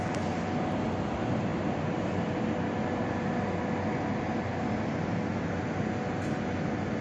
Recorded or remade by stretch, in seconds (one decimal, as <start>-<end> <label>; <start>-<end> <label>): 0.0-7.0 recorded